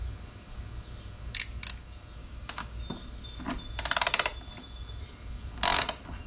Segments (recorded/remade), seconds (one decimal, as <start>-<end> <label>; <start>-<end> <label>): 0.0-2.2 recorded; 2.2-2.8 remade; 2.8-6.3 recorded